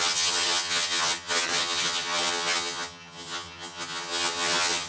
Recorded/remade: remade